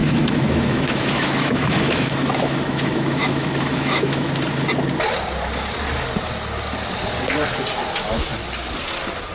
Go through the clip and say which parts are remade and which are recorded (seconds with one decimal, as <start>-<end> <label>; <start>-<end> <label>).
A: 0.0-4.3 remade; 4.3-9.3 recorded